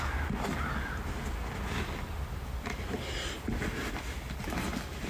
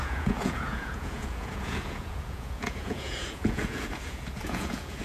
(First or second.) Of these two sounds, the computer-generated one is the second